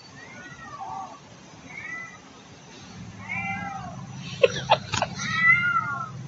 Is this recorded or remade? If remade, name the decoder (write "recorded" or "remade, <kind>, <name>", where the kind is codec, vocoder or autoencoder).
recorded